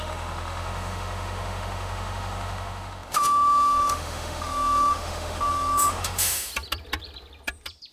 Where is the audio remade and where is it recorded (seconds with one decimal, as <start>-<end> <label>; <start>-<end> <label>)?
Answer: 0.0-6.5 remade; 6.5-7.9 recorded